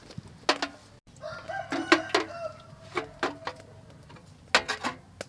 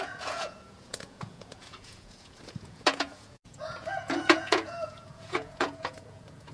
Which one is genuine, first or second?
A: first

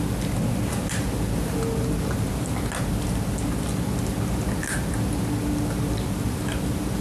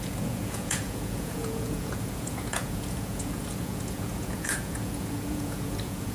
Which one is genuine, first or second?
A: first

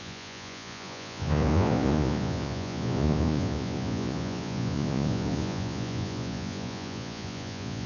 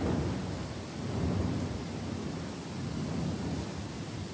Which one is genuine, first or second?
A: second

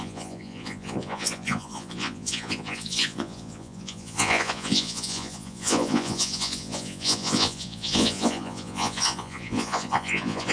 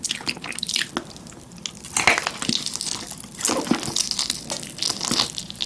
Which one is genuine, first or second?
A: second